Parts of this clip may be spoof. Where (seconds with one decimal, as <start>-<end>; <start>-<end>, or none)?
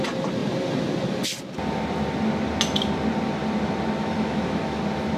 4.0-4.8